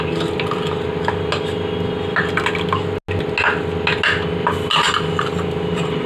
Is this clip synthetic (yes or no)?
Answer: no